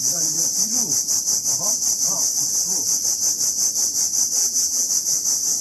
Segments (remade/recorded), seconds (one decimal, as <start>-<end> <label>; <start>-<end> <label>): 0.0-4.4 recorded; 4.4-4.9 remade; 4.9-5.6 recorded